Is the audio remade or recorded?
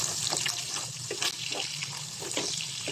recorded